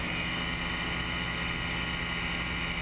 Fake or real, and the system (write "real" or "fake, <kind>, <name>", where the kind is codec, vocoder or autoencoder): real